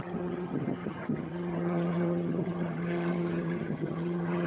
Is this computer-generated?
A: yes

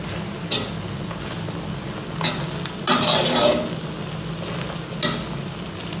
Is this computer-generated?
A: no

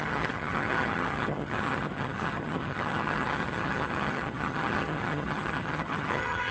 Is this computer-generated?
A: yes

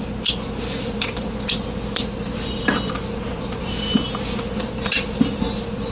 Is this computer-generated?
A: no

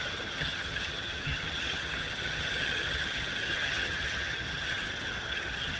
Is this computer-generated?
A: yes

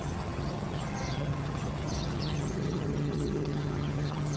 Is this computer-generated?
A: yes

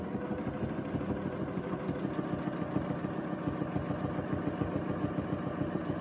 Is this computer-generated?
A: no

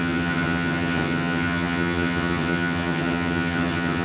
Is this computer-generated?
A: yes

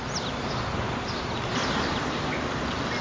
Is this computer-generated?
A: no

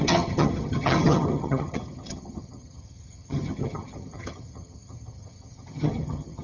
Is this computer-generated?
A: yes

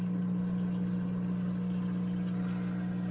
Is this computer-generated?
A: no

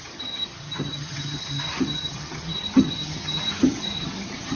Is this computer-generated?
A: yes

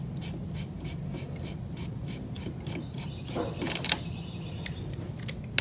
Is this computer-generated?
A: no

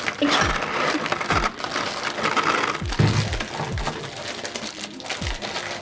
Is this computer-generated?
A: no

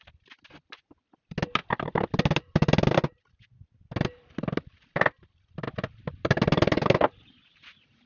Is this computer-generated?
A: no